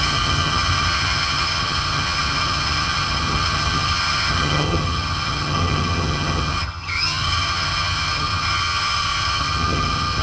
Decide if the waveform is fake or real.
fake